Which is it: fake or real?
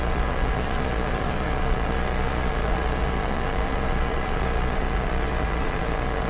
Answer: fake